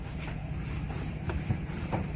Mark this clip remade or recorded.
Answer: recorded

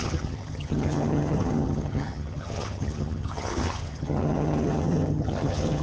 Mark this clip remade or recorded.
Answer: remade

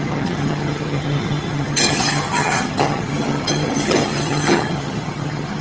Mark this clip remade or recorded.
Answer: remade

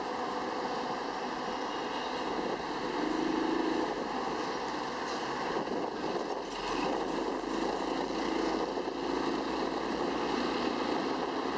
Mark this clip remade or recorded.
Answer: recorded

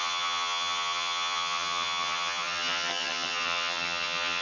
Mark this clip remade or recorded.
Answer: remade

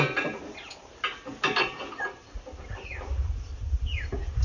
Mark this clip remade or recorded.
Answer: recorded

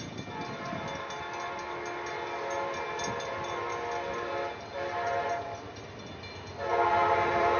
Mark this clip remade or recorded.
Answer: recorded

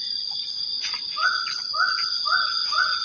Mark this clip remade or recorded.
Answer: recorded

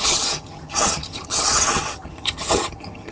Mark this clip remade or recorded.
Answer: remade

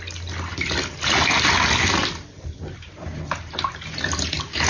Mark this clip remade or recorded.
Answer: recorded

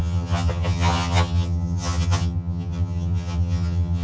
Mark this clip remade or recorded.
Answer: remade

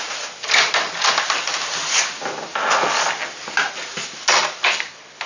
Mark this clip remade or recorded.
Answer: recorded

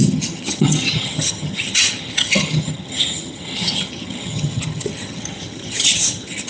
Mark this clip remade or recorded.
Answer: remade